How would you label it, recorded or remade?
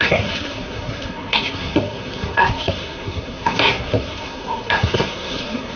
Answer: remade